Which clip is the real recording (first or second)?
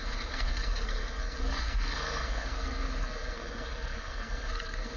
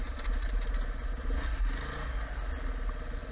second